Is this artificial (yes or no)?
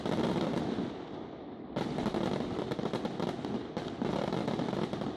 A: no